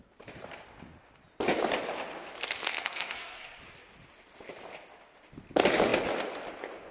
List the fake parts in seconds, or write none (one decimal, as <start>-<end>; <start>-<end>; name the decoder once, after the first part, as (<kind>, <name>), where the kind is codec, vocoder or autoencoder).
2.7-3.6 (codec, SNAC)